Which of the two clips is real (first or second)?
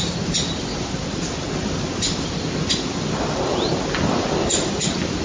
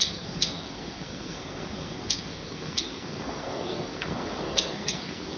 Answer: first